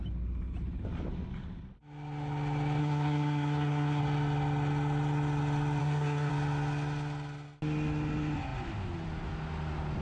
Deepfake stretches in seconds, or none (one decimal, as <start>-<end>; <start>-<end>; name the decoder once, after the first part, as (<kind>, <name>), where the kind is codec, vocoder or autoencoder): 2.8-4.0 (codec, SNAC); 5.8-6.3